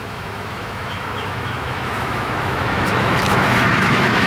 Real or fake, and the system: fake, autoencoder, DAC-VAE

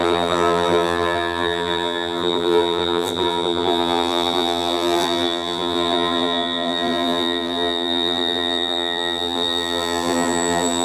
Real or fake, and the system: fake, vocoder, BigVGAN v2